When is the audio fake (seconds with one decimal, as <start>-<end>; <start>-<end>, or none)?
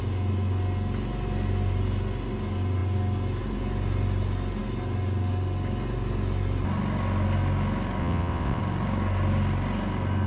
8.0-8.6